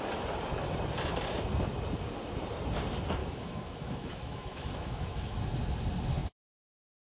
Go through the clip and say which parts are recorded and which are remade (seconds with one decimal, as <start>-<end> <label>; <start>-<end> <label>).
0.0-3.2 recorded; 3.2-5.4 remade; 5.4-7.0 recorded